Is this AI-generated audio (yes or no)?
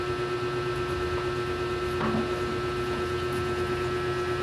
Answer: no